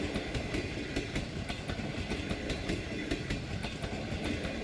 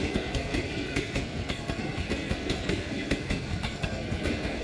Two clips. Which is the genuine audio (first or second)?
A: first